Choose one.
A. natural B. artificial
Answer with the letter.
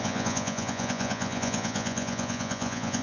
B